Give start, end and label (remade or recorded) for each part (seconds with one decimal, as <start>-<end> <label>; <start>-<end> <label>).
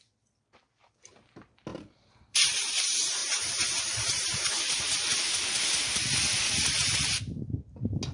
0.0-1.7 recorded; 1.7-2.7 remade; 2.7-3.2 recorded; 3.2-4.6 remade; 4.6-8.1 recorded